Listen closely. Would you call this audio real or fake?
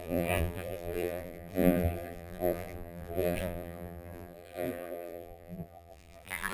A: fake